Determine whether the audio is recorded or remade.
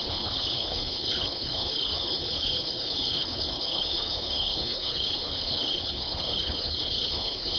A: remade